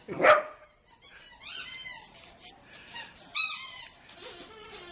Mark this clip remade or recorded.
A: recorded